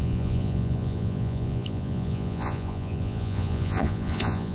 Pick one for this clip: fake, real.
fake